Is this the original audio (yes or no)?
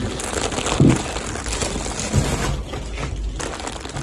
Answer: yes